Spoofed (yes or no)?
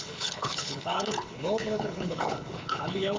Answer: yes